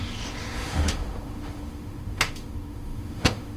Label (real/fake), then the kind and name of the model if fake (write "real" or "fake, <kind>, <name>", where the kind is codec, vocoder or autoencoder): fake, autoencoder, DAC-VAE